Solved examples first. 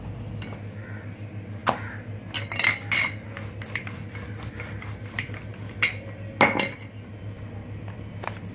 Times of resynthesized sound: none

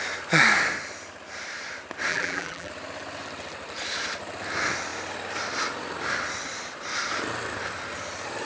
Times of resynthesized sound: 2.1-2.7 (vocoder, BigVGAN v2)

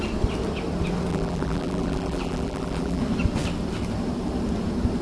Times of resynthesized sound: 1.1-3.0 (vocoder, BigVGAN v2)